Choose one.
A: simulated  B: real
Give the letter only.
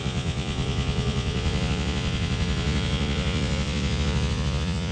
A